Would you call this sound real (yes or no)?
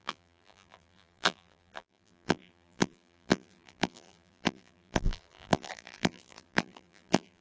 no